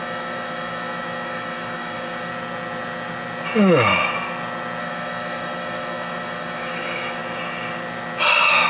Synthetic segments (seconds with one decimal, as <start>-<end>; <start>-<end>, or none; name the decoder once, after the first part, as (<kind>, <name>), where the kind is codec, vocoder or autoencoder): 0.0-2.3 (autoencoder, DAC-VAE); 4.8-7.2